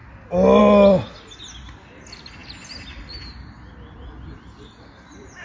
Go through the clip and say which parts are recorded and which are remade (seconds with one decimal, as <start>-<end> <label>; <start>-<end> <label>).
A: 0.0-5.4 recorded